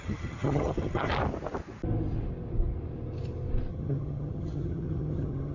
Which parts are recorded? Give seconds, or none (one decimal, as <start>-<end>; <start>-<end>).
1.1-3.7